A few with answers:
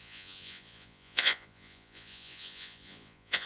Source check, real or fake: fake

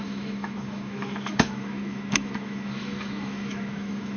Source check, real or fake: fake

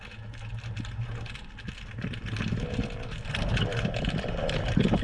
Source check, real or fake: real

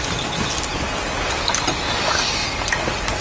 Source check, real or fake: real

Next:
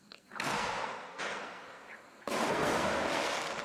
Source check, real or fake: fake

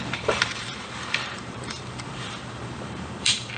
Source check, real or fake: fake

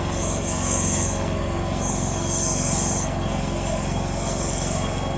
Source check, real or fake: fake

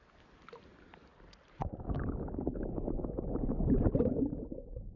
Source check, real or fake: real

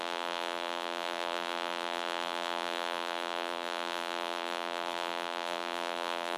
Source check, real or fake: fake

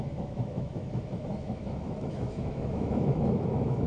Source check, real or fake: fake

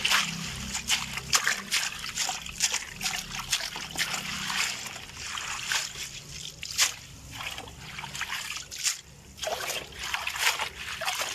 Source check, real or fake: real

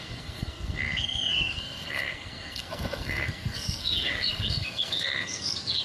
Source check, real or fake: fake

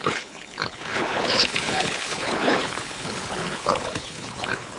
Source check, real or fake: fake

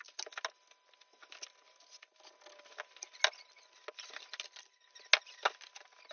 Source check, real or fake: real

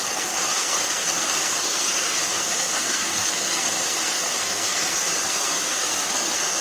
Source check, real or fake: fake